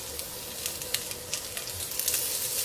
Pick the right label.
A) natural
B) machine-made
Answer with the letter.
A